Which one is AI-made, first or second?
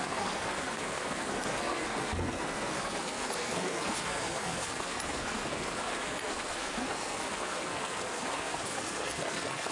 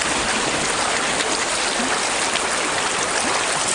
first